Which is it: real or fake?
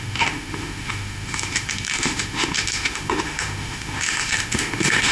fake